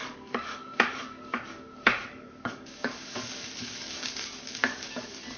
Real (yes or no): no